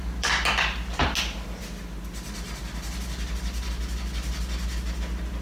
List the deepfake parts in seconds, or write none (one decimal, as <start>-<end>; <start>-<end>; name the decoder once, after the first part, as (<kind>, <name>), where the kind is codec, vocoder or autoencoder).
none